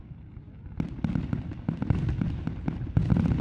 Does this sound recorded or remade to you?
recorded